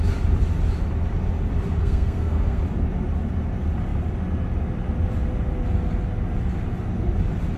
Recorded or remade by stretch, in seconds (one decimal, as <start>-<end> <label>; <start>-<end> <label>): 0.0-1.8 recorded; 1.8-2.6 remade; 2.6-7.6 recorded